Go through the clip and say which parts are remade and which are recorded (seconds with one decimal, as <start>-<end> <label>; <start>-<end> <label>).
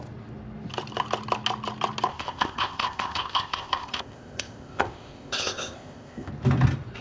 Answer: 0.0-2.1 recorded; 2.1-6.3 remade; 6.3-7.0 recorded